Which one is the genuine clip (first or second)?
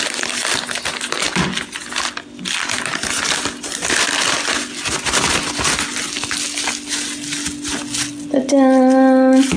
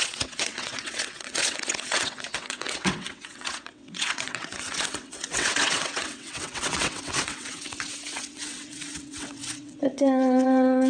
first